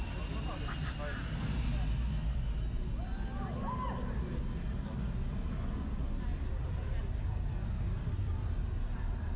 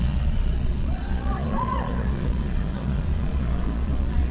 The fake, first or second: second